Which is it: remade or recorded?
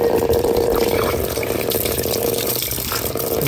remade